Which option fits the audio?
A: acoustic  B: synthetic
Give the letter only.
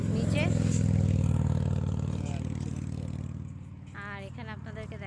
A